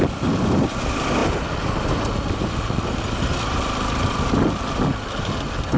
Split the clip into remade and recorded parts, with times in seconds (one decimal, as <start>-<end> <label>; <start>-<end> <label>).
0.0-5.8 recorded